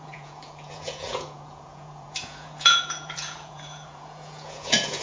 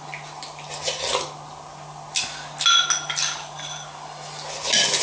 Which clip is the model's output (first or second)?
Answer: first